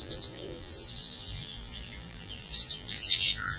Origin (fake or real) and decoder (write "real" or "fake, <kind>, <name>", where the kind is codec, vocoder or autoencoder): fake, vocoder, BigVGAN v2